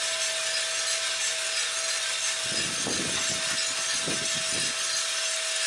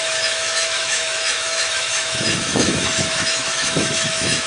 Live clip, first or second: first